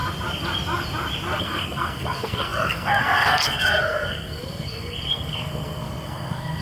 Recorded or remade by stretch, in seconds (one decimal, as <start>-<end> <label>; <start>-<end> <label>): 0.0-1.4 recorded; 1.4-6.6 remade